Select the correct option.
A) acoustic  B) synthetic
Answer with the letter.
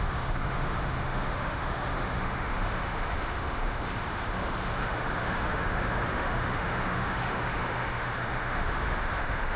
B